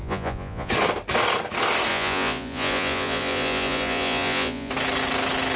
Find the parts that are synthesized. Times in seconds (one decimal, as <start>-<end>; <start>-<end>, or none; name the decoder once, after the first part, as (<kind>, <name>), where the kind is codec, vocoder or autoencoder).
0.0-0.7 (vocoder, Vocos); 1.9-4.7